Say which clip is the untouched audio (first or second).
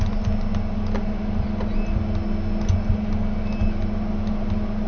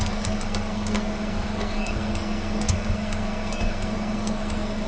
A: first